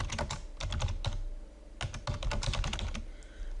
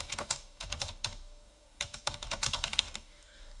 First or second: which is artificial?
second